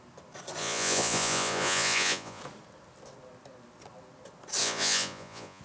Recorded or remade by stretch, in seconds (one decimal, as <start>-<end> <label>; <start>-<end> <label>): 0.0-0.6 recorded; 0.6-2.4 remade; 2.4-4.6 recorded; 4.6-5.6 remade